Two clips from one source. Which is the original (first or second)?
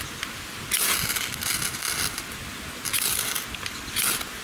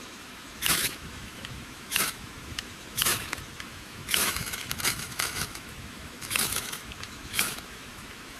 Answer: first